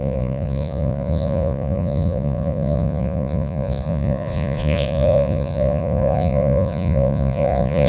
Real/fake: fake